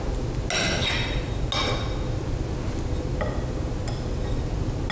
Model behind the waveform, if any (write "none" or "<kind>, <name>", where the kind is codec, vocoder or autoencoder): none